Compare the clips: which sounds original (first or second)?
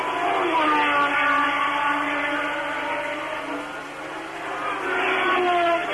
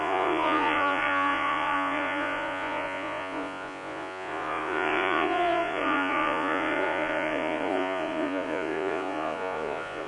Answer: first